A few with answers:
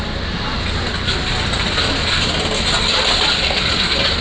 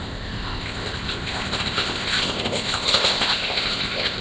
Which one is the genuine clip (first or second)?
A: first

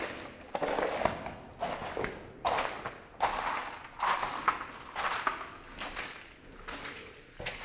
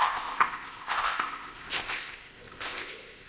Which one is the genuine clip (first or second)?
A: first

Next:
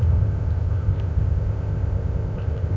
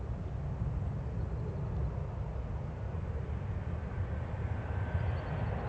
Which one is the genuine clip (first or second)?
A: second